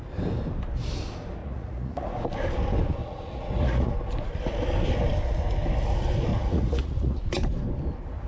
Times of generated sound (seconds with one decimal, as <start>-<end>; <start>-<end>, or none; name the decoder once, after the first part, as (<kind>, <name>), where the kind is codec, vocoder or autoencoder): 1.4-2.1 (vocoder, Vocos); 3.0-3.9; 6.3-7.2